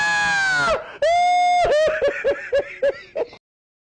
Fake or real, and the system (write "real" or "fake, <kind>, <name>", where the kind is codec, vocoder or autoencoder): real